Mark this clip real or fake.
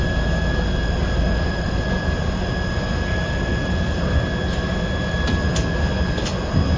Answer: real